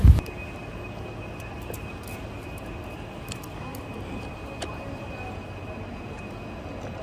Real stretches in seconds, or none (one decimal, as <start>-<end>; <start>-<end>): 0.0-7.0

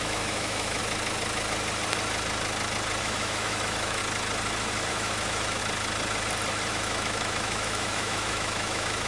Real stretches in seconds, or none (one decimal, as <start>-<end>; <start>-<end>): 0.8-3.0; 4.0-4.9; 5.6-6.7

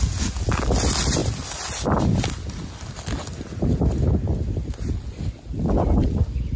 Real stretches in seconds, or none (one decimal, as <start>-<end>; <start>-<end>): 0.0-6.6

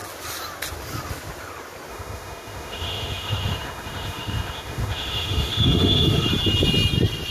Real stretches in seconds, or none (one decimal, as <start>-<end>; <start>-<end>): 0.0-1.9; 6.3-7.3

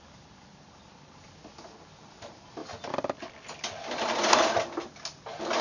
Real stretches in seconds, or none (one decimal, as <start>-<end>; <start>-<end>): 0.0-5.6